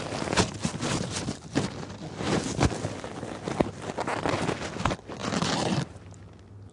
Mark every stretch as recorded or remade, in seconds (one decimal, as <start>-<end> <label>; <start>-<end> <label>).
0.0-5.2 recorded; 5.2-6.2 remade; 6.2-6.7 recorded